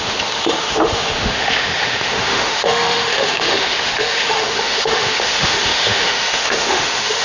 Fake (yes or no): yes